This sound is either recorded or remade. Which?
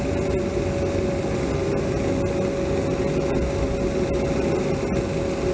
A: recorded